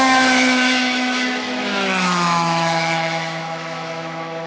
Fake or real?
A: fake